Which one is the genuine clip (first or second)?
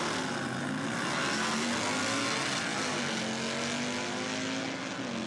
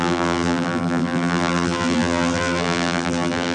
first